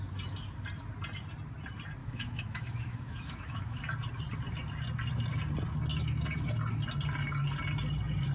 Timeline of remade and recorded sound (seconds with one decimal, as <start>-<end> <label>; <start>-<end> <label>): 0.0-2.0 recorded; 2.0-3.8 remade; 3.8-8.3 recorded

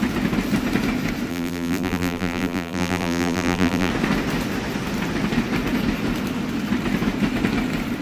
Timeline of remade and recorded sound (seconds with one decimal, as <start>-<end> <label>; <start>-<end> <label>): 0.0-1.3 recorded; 1.3-3.9 remade; 3.9-8.0 recorded